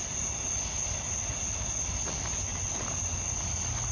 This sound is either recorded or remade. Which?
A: recorded